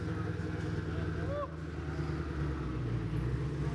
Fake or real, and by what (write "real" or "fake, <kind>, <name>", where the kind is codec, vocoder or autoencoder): real